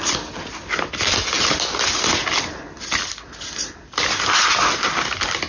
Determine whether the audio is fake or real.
real